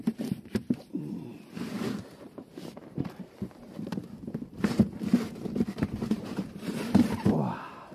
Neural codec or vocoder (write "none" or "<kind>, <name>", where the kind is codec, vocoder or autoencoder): vocoder, BigVGAN v2